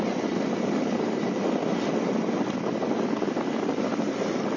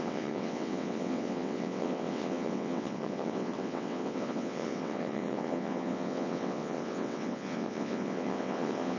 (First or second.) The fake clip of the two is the second